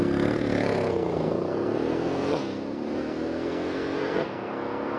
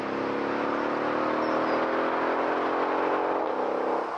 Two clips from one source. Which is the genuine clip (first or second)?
second